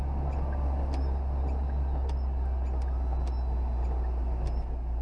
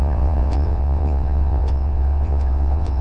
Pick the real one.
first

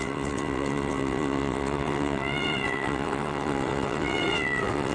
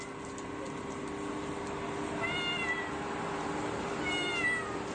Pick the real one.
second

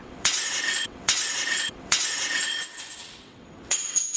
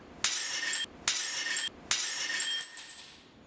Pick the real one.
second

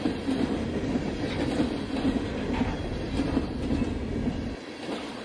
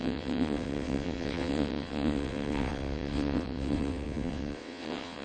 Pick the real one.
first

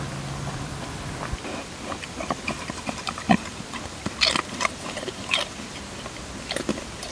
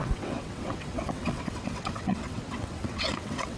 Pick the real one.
first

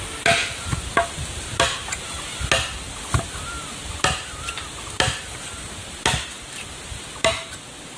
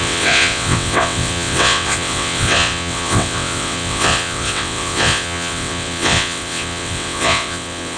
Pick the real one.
first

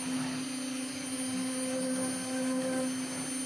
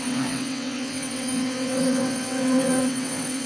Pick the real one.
first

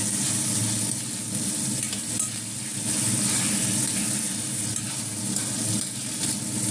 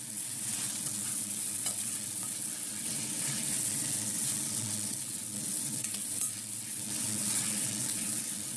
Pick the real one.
first